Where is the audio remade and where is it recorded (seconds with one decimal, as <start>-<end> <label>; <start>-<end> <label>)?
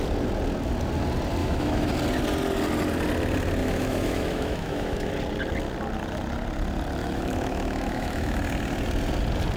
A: 0.0-1.4 recorded; 1.4-1.9 remade; 1.9-3.6 recorded; 3.6-5.1 remade; 5.1-7.0 recorded; 7.0-8.4 remade; 8.4-9.6 recorded